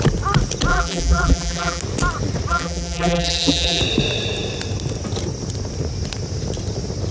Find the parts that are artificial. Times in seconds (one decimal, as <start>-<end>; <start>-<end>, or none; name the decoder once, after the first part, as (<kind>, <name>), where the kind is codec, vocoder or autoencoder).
0.7-1.8 (vocoder, BigVGAN v2); 2.5-3.8